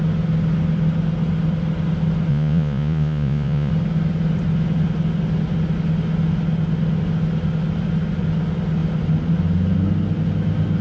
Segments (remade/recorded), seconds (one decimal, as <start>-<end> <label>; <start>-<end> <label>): 0.0-2.3 recorded; 2.3-3.7 remade; 3.7-10.8 recorded